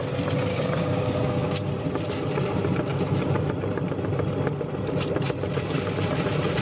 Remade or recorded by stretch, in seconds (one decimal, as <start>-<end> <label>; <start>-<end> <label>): 0.0-0.5 recorded; 0.5-1.7 remade; 1.7-6.6 recorded